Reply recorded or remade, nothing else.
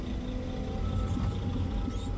recorded